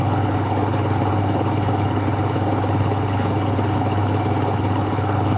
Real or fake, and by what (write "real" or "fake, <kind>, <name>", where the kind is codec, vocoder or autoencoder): fake, codec, HILCodec